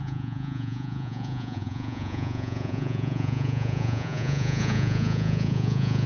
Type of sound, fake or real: fake